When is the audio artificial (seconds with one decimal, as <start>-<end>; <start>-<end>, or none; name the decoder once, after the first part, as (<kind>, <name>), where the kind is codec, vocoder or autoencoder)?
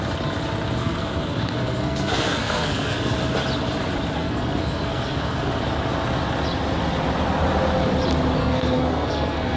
0.8-3.2 (codec, SNAC); 4.2-5.6; 8.4-9.6